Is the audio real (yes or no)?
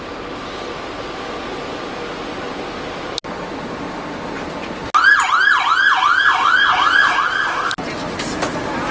yes